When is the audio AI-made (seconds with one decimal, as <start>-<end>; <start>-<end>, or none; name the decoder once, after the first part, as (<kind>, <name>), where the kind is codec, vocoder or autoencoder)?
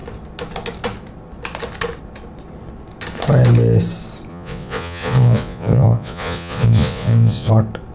4.3-7.5 (vocoder, Vocos)